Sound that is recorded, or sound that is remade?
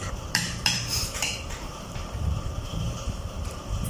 remade